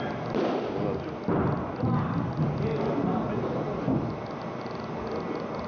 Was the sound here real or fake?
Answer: real